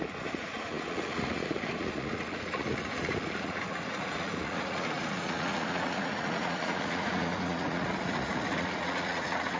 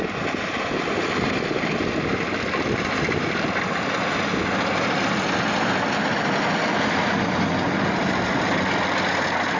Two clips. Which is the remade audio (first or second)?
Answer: first